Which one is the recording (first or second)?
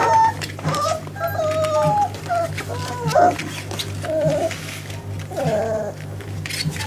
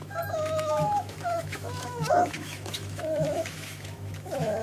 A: first